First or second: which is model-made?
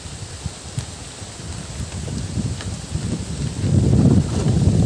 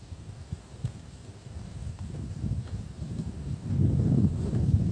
second